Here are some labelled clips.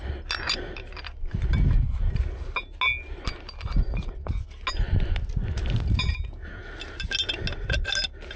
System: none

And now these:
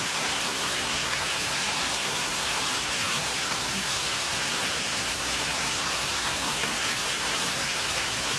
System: codec, SNAC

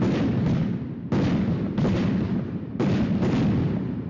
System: none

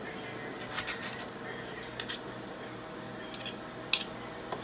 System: none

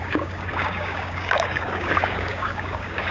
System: codec, DAC